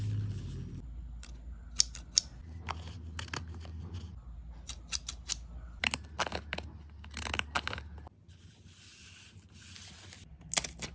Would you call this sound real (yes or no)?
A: yes